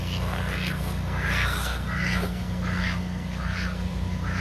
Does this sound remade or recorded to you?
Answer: remade